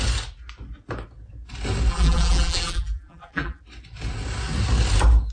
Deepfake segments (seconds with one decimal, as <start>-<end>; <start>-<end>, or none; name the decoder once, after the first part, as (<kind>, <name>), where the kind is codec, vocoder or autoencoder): 1.9-3.6 (vocoder, BigVGAN v2)